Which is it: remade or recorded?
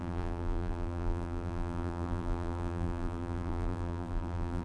remade